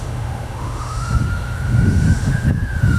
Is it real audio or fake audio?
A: fake